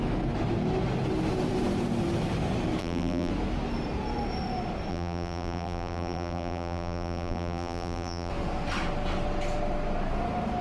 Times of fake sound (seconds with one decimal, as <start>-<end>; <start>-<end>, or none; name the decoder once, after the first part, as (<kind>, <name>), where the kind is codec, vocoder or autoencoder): 2.8-3.3 (vocoder, BigVGAN v2); 4.9-8.3